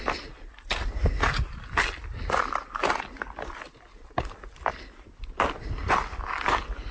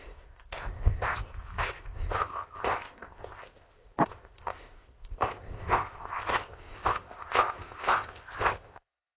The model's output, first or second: second